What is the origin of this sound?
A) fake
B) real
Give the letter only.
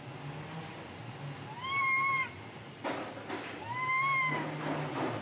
B